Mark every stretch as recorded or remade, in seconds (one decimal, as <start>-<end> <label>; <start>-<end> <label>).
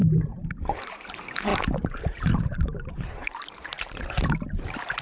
0.0-5.0 remade